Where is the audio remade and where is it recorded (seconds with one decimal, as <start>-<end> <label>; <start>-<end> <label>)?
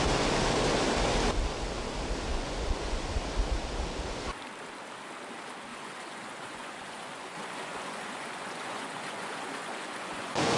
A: 0.0-2.3 recorded; 2.3-3.2 remade; 3.2-5.7 recorded; 5.7-10.6 remade